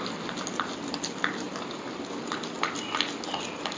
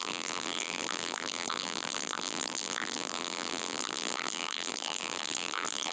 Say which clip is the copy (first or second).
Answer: second